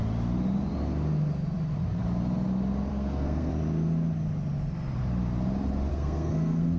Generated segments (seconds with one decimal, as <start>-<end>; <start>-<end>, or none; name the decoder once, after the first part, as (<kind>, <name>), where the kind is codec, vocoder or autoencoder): 2.9-3.5 (codec, SNAC); 5.9-6.8